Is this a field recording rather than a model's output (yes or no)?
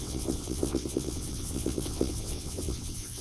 no